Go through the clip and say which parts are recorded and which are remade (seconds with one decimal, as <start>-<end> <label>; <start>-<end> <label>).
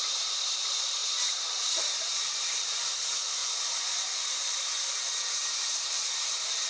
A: 0.0-1.0 remade; 1.0-2.0 recorded; 2.0-3.4 remade; 3.4-4.0 recorded; 4.0-4.7 remade; 4.7-5.3 recorded; 5.3-6.7 remade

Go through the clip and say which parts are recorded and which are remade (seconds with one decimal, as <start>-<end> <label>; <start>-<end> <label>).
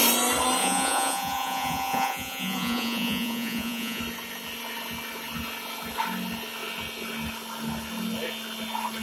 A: 0.0-0.6 recorded; 0.6-4.0 remade; 4.0-9.0 recorded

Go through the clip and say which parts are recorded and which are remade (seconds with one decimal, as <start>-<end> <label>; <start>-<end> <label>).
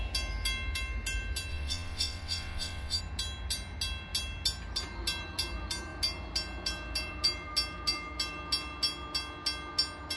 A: 0.0-1.5 recorded; 1.5-3.0 remade; 3.0-10.2 recorded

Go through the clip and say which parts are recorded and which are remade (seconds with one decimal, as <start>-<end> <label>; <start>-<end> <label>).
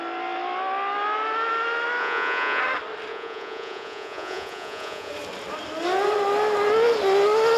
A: 0.0-2.0 recorded; 2.0-2.6 remade; 2.6-3.1 recorded; 3.1-5.1 remade; 5.1-7.6 recorded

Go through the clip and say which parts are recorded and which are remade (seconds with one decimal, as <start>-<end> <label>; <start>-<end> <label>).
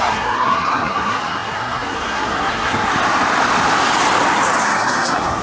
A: 0.0-2.9 remade; 2.9-4.6 recorded; 4.6-5.4 remade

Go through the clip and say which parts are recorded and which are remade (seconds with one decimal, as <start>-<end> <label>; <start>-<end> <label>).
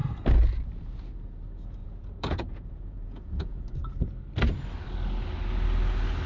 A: 0.0-1.8 recorded; 1.8-4.1 remade; 4.1-6.3 recorded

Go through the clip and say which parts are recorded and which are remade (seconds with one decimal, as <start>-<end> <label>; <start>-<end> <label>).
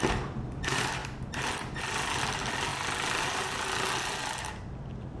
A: 0.0-5.2 recorded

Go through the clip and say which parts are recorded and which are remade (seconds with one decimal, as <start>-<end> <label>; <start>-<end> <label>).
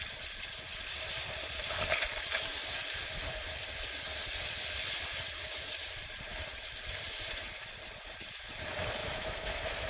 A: 0.0-9.0 recorded; 9.0-9.9 remade